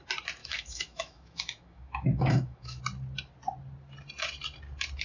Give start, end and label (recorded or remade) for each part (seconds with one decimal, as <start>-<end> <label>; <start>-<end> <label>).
0.0-0.4 recorded; 0.4-2.8 remade; 2.8-5.0 recorded